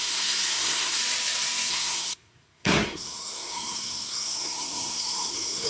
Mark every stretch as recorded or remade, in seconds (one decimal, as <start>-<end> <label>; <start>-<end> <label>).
0.0-1.0 remade; 1.0-1.7 recorded; 1.7-5.7 remade